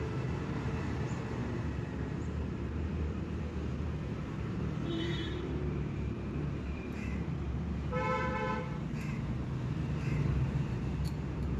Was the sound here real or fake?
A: fake